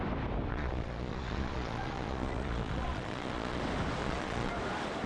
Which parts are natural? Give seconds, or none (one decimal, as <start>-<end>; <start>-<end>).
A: 0.0-0.5; 3.6-4.0; 4.5-5.1